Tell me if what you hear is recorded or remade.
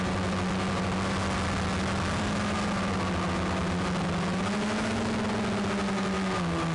recorded